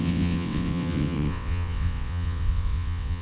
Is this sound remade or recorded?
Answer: remade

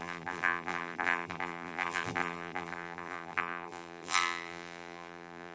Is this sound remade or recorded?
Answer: remade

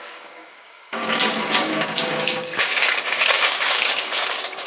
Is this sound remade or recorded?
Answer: remade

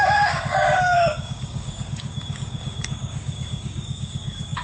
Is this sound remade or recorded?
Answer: remade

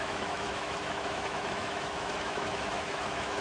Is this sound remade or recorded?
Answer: remade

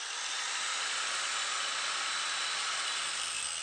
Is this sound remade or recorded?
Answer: recorded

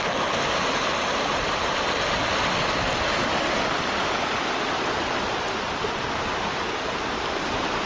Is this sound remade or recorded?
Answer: recorded